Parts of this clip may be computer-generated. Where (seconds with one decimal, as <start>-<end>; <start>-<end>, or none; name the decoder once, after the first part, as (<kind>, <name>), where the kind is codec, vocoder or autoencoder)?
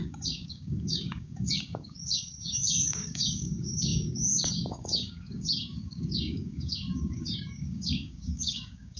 0.0-9.0 (codec, DAC)